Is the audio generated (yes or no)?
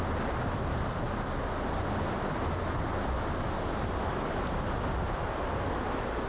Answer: no